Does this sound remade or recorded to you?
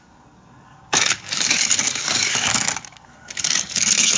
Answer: remade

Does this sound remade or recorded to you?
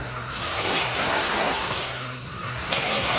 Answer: remade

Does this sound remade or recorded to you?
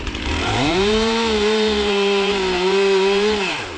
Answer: remade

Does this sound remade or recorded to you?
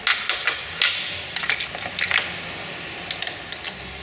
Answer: recorded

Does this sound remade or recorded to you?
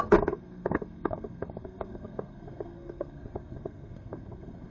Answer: remade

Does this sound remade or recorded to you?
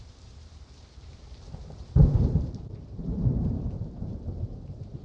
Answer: remade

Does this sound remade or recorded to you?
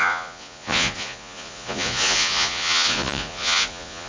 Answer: remade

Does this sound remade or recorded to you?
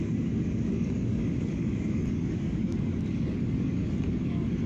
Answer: remade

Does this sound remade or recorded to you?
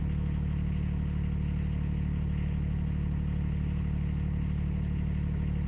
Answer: recorded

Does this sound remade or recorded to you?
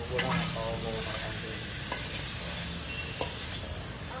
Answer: recorded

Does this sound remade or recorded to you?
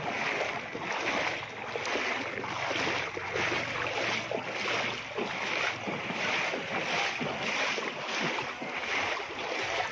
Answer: recorded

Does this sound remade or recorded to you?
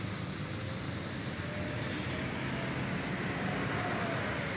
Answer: recorded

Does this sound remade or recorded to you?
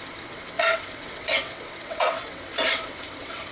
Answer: remade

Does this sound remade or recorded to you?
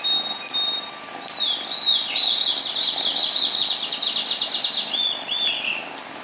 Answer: recorded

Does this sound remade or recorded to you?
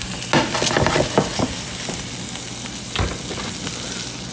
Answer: recorded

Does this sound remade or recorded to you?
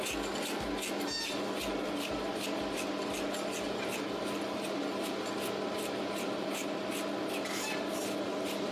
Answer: recorded